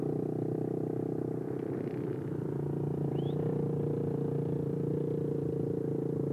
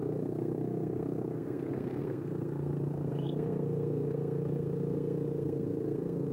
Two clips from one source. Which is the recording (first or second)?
first